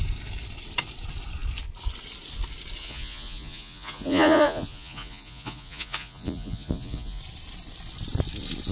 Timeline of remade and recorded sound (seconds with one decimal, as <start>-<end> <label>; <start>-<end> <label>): 0.0-2.8 recorded; 2.8-7.2 remade; 7.2-8.7 recorded